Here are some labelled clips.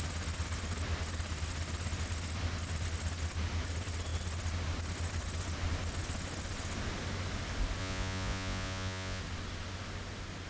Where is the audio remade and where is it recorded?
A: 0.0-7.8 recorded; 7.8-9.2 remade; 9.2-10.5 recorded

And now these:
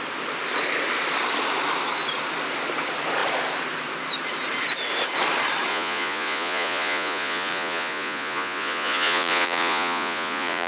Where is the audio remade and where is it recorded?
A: 0.0-5.7 recorded; 5.7-10.7 remade

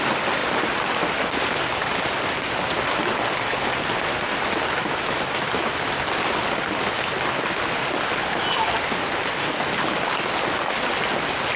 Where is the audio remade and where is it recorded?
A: 0.0-11.6 recorded

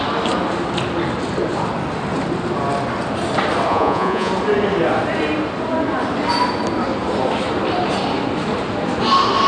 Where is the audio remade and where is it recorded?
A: 0.0-3.7 recorded; 3.7-4.3 remade; 4.3-9.5 recorded

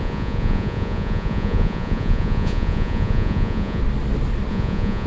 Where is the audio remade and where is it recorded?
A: 0.0-3.8 remade; 3.8-4.5 recorded; 4.5-5.1 remade

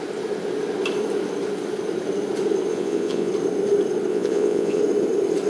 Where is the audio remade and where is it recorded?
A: 0.0-2.7 recorded; 2.7-3.3 remade; 3.3-4.1 recorded; 4.1-4.8 remade; 4.8-5.5 recorded

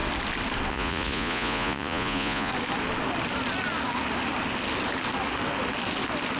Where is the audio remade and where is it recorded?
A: 0.0-0.7 recorded; 0.7-2.5 remade; 2.5-6.4 recorded